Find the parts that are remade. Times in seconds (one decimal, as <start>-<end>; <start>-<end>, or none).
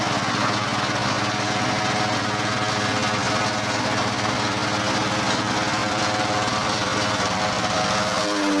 5.8-7.8